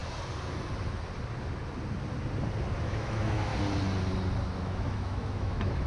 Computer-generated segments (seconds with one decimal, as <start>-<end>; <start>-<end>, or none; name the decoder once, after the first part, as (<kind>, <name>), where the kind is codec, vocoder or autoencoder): 2.8-3.5 (autoencoder, DAC-VAE); 4.5-5.9